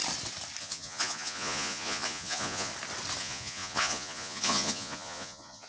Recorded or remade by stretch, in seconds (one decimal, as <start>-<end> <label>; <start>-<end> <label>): 0.0-0.6 recorded; 0.6-2.7 remade; 2.7-3.2 recorded; 3.2-5.7 remade